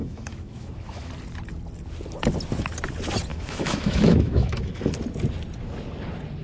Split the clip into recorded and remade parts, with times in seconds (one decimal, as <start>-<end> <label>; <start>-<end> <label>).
0.0-1.1 remade; 1.1-3.3 recorded; 3.3-4.8 remade; 4.8-6.4 recorded